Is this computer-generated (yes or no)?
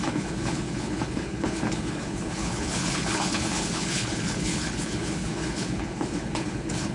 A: yes